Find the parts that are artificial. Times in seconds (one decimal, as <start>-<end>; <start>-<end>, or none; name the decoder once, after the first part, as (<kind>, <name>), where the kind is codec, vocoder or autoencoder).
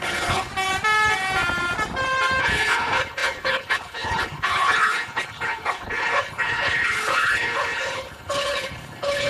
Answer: 0.0-0.5 (codec, HILCodec); 2.4-9.3